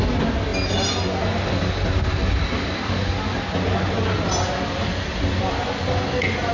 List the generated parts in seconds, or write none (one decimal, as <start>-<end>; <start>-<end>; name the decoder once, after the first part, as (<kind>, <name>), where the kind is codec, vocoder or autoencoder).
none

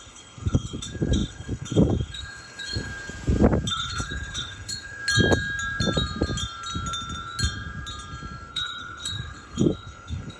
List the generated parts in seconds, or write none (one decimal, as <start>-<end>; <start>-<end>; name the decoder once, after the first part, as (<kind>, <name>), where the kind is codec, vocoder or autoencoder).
0.0-2.9 (codec, HILCodec); 3.7-5.0; 8.5-10.4

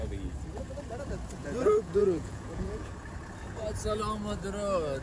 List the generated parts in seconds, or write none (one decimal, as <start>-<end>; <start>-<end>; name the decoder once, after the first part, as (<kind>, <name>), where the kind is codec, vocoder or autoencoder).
1.4-2.9 (vocoder, Vocos)